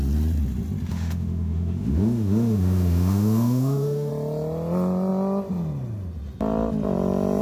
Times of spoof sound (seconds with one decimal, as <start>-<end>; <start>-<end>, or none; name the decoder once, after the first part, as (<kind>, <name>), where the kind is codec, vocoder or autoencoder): 0.9-4.1 (autoencoder, DAC-VAE)